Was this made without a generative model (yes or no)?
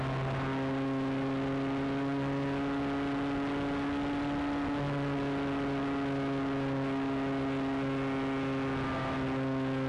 yes